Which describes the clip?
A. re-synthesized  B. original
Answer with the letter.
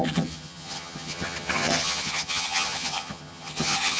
A